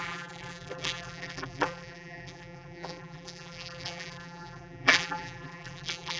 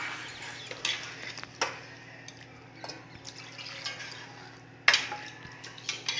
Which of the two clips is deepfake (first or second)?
first